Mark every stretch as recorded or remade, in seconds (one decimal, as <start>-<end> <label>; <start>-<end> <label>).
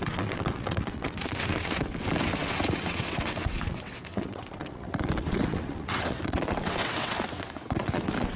0.0-8.4 remade